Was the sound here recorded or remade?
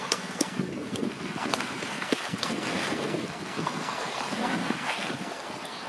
remade